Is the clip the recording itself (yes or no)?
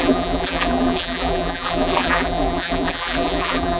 no